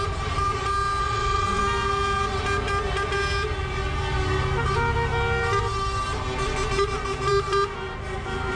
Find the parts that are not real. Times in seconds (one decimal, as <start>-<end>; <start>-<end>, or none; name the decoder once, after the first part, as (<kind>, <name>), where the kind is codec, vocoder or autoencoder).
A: 1.0-1.6 (vocoder, WaveNeXt)